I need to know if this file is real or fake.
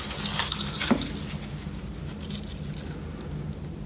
real